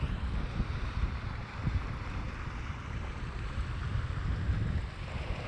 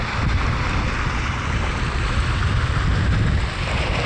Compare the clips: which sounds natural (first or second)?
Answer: second